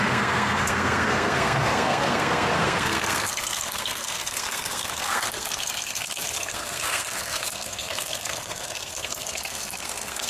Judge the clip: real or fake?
fake